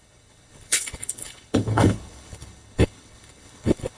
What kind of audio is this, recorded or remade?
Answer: remade